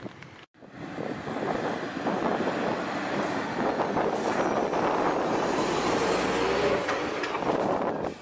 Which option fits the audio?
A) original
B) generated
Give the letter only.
A